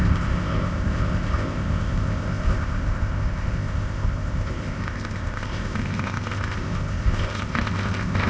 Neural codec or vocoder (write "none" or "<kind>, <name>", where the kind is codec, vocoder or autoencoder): codec, ZipCodec